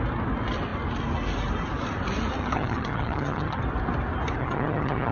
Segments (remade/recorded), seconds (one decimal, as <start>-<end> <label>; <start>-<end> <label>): 0.0-2.4 recorded; 2.4-3.6 remade; 3.6-4.4 recorded; 4.4-5.1 remade